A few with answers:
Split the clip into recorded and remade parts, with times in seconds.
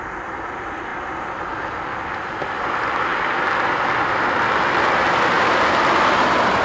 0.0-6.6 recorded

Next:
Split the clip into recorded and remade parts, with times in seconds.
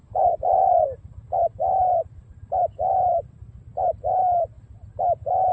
0.0-3.3 remade; 3.3-5.5 recorded